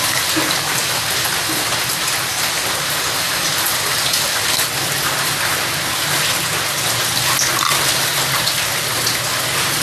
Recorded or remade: recorded